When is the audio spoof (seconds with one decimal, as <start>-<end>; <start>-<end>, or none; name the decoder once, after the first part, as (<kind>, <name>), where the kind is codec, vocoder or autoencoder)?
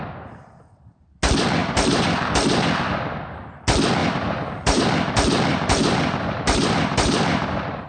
1.6-2.3 (vocoder, BigVGAN v2); 4.0-4.8; 5.5-7.9